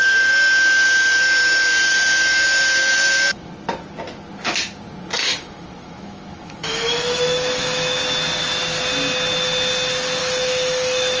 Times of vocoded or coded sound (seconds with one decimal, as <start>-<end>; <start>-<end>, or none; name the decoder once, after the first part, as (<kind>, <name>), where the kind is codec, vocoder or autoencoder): 2.8-3.5 (autoencoder, DAC-VAE); 5.2-8.0; 10.2-11.2